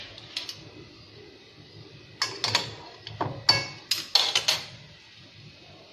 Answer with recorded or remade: recorded